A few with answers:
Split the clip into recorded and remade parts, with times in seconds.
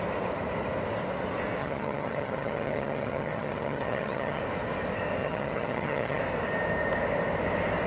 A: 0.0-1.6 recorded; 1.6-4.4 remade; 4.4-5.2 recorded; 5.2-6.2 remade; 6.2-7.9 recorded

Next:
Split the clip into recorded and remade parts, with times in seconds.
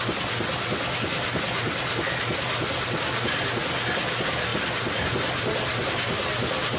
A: 0.0-4.5 recorded; 4.5-5.1 remade; 5.1-6.8 recorded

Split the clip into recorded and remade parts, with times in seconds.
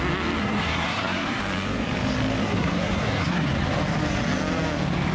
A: 0.0-0.4 recorded; 0.4-1.4 remade; 1.4-2.4 recorded; 2.4-3.5 remade; 3.5-5.1 recorded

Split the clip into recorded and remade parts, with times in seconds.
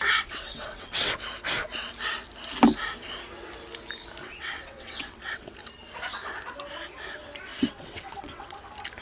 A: 0.0-1.1 remade; 1.1-4.2 recorded; 4.2-5.5 remade; 5.5-7.5 recorded; 7.5-8.6 remade; 8.6-9.0 recorded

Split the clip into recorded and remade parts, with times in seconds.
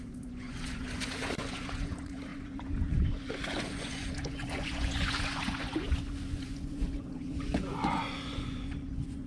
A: 0.0-9.3 remade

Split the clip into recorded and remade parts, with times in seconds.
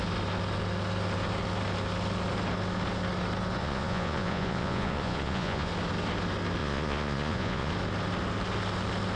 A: 0.0-3.6 recorded; 3.6-5.7 remade; 5.7-6.6 recorded; 6.6-7.7 remade; 7.7-9.2 recorded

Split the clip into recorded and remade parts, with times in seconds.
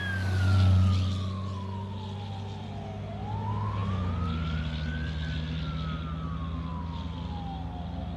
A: 0.0-8.2 recorded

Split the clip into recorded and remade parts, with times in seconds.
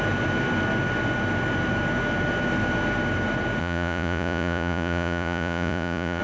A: 0.0-3.6 recorded; 3.6-6.2 remade